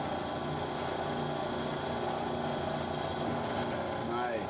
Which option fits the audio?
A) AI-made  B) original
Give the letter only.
B